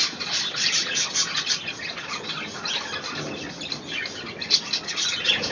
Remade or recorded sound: recorded